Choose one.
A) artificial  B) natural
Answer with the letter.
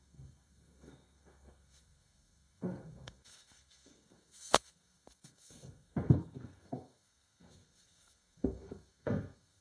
A